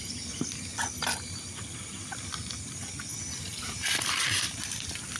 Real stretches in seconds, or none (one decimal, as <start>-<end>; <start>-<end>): 3.1-3.6